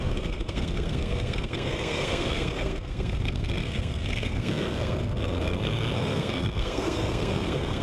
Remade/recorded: remade